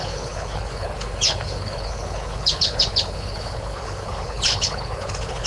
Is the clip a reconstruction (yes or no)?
yes